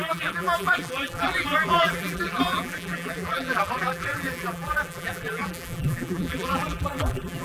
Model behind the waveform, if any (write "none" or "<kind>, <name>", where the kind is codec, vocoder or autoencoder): vocoder, BigVGAN v2